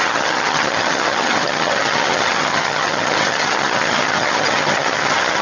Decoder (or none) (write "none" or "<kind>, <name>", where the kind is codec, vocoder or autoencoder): vocoder, HiFi-GAN